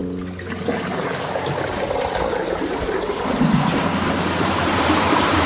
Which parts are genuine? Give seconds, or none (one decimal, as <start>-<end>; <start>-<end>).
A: 0.0-2.4; 3.9-4.6